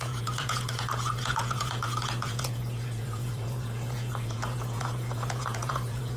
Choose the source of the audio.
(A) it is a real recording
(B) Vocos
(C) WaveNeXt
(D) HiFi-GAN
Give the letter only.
B